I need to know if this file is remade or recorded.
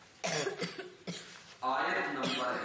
recorded